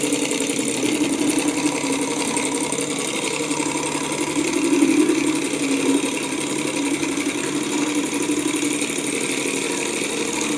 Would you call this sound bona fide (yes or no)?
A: yes